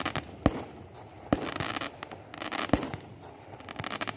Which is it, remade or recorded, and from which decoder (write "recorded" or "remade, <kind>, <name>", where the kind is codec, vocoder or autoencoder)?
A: recorded